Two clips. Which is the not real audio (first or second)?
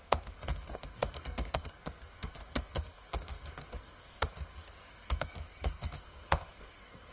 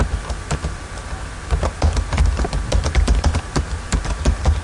first